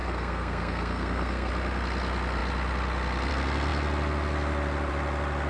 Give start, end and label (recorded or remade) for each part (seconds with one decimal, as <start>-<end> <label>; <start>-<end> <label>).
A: 0.0-1.5 remade; 1.5-5.5 recorded